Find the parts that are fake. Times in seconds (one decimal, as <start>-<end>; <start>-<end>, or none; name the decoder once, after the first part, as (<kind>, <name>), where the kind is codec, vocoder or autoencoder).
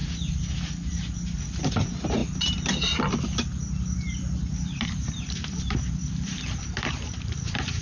1.6-7.8 (vocoder, BigVGAN v2)